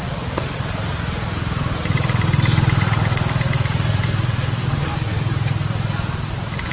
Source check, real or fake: fake